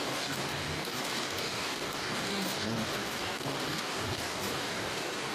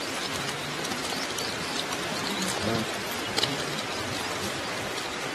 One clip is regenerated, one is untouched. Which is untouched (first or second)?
second